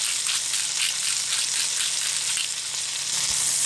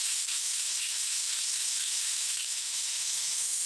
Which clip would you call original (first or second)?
first